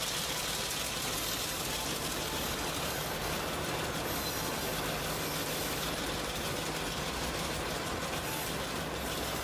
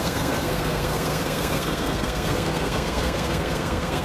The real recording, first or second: first